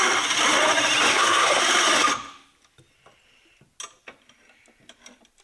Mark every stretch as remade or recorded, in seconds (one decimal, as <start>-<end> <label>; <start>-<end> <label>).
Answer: 0.0-1.1 recorded; 1.1-1.6 remade; 1.6-5.4 recorded